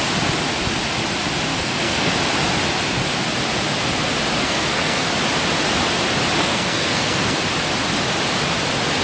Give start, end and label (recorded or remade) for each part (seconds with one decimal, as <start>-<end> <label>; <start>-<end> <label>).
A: 0.0-1.5 recorded; 1.5-2.1 remade; 2.1-4.4 recorded; 4.4-5.1 remade; 5.1-6.4 recorded; 6.4-7.4 remade; 7.4-9.0 recorded